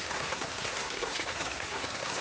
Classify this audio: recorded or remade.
remade